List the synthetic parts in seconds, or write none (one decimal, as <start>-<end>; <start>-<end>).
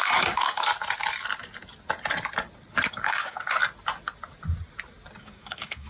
0.0-0.7; 2.9-3.6; 5.2-5.9